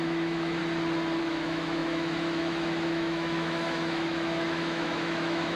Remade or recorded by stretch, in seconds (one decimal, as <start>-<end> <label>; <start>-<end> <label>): 0.0-0.6 remade; 0.6-1.2 recorded; 1.2-5.6 remade